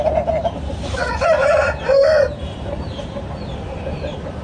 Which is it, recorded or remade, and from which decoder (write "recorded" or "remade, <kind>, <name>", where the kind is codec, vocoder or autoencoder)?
remade, vocoder, BigVGAN v2